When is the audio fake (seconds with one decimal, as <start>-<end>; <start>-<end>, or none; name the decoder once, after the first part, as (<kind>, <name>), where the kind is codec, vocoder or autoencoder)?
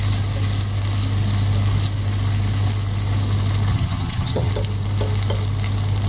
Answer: 3.7-4.5 (vocoder, HiFi-GAN)